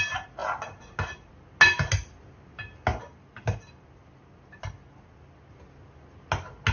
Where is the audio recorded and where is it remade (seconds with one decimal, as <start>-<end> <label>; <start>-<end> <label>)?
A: 0.0-6.7 recorded